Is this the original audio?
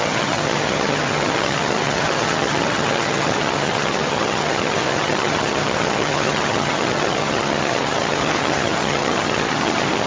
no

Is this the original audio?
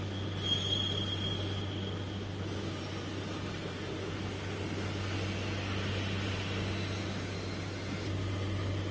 yes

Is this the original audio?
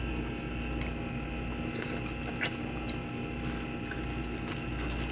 yes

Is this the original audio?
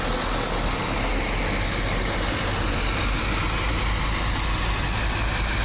yes